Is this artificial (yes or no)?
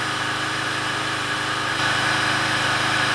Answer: yes